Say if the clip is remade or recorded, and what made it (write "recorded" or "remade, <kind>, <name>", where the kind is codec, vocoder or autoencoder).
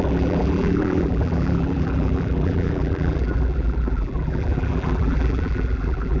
remade, vocoder, BigVGAN v2